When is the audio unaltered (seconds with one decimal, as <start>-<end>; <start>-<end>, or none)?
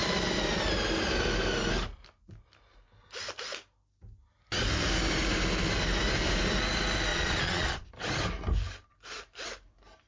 0.0-7.1; 7.9-10.1